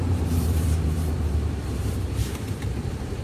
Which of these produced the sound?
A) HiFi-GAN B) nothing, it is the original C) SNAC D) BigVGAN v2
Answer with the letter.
D